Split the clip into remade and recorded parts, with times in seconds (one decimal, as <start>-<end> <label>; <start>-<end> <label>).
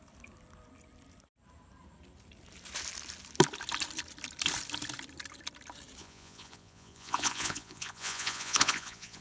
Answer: 0.0-6.0 recorded; 6.0-9.2 remade